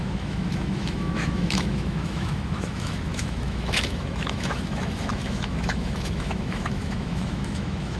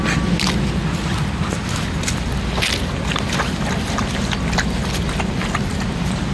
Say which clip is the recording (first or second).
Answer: second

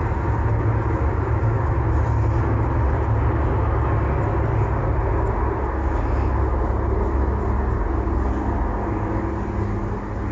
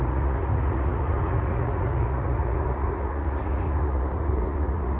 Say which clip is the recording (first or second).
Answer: first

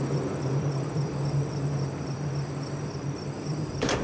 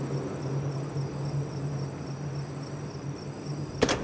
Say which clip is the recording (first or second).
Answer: second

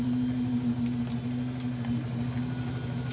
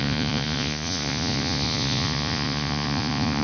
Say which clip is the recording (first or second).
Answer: first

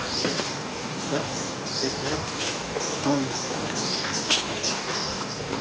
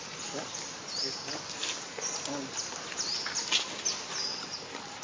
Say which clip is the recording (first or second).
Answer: second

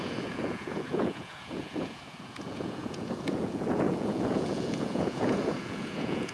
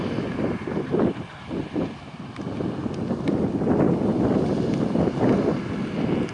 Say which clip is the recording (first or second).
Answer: second